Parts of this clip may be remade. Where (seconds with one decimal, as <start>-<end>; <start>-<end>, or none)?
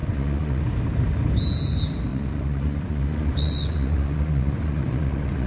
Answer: 0.0-0.6; 2.1-5.5